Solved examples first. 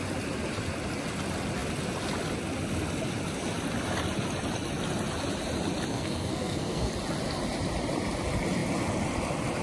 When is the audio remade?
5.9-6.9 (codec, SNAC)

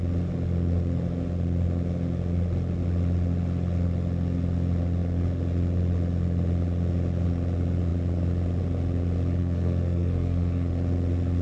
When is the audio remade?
9.4-10.7 (codec, SNAC)

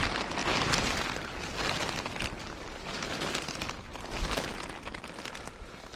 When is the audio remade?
none

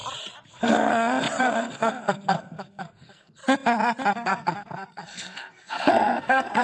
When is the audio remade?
0.5-0.9 (codec, SNAC); 1.4-3.4; 4.1-6.6

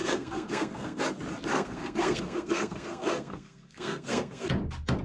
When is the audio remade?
0.0-1.0 (codec, SNAC); 1.5-4.5

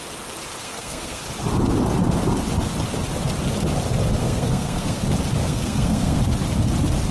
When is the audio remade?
0.6-1.2 (codec, SNAC); 4.2-5.0; 5.4-6.2

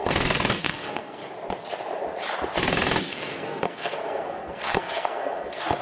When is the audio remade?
0.0-1.2 (codec, SNAC); 3.0-5.8

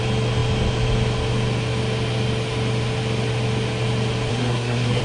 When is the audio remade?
4.3-5.0 (codec, SNAC)